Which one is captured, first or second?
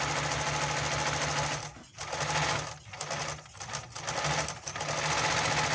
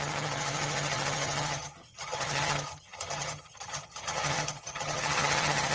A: first